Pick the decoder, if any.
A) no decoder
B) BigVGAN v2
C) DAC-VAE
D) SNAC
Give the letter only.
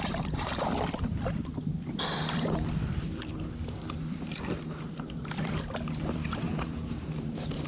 B